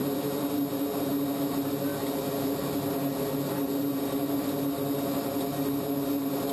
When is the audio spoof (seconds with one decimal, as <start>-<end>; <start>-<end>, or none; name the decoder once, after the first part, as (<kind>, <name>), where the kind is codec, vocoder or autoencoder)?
none